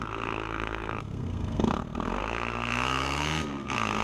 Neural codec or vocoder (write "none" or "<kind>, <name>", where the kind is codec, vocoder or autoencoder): codec, SNAC